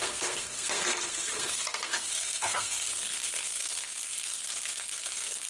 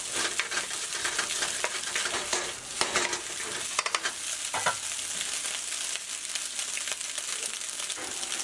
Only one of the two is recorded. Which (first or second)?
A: second